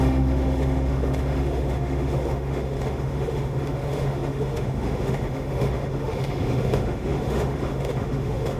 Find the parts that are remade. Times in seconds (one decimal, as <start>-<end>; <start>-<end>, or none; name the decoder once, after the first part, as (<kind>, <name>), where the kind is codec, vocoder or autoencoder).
0.0-8.6 (autoencoder, DAC-VAE)